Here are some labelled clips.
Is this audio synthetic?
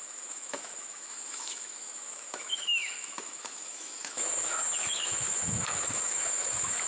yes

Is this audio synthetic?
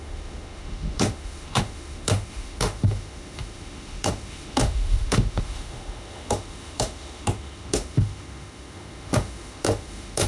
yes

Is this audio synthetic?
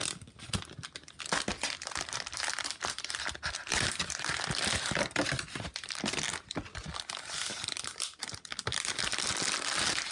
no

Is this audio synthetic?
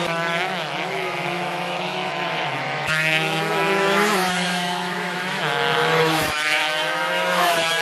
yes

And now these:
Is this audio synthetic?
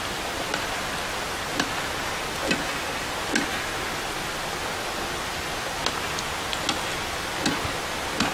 no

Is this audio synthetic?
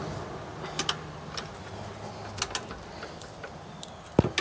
no